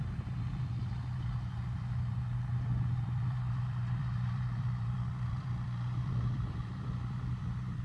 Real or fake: fake